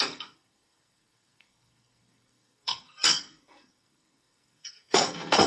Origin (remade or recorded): remade